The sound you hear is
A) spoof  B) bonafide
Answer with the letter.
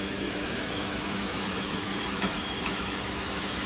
A